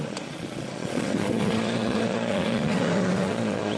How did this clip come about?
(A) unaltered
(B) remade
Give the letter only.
B